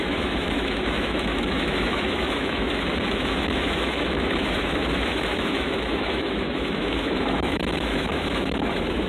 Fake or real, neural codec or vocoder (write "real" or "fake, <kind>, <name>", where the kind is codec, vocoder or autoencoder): fake, autoencoder, DAC-VAE